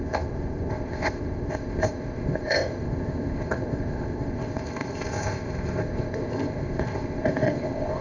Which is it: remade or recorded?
remade